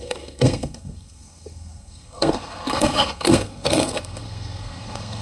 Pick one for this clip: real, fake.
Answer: fake